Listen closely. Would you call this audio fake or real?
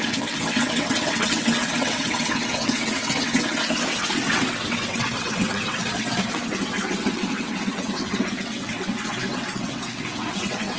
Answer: fake